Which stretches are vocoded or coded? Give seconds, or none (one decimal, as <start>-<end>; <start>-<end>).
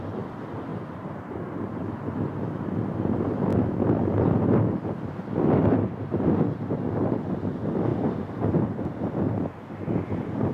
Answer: 0.7-1.8